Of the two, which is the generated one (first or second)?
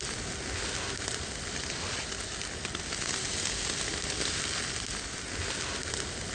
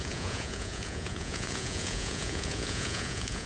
second